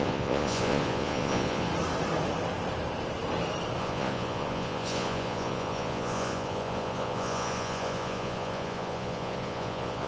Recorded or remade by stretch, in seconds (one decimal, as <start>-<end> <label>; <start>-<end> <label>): 0.0-1.7 remade; 1.7-3.8 recorded; 3.8-10.1 remade